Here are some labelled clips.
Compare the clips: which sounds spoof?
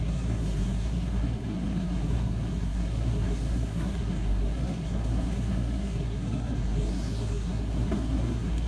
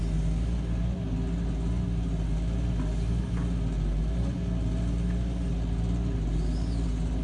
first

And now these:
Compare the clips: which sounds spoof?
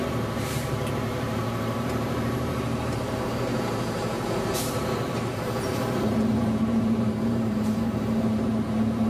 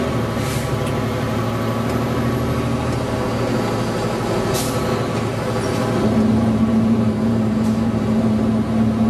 first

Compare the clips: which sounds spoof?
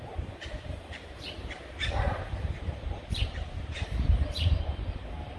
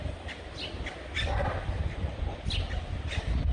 first